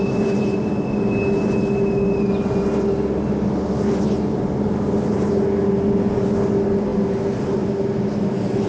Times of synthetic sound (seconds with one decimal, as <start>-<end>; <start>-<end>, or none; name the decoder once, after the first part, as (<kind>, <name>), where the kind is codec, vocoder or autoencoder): none